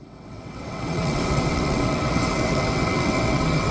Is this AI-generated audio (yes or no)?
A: yes